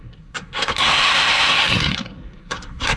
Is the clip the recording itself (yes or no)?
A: no